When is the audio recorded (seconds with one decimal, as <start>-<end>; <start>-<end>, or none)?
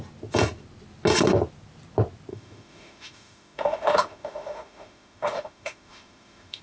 0.0-2.3